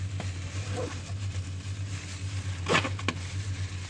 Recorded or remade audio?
recorded